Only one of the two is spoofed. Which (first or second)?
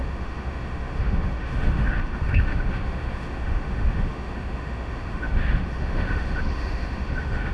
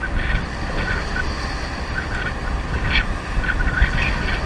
first